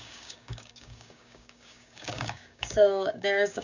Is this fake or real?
fake